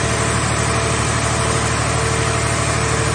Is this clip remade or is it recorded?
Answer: recorded